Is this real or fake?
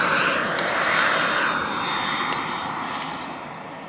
real